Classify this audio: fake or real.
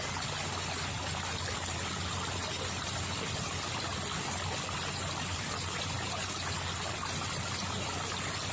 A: real